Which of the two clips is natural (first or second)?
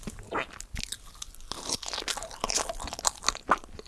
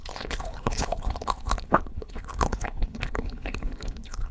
first